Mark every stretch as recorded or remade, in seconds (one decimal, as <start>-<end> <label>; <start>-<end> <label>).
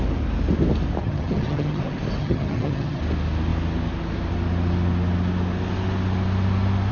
0.0-1.0 recorded; 1.0-1.8 remade; 1.8-2.2 recorded; 2.2-3.0 remade; 3.0-6.9 recorded